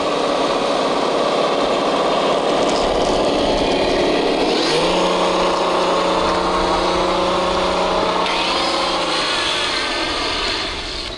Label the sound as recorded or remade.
recorded